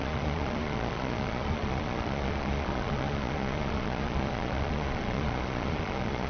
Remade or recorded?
remade